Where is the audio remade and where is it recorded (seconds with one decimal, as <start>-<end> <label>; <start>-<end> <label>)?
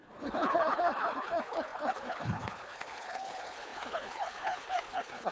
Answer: 0.0-5.3 remade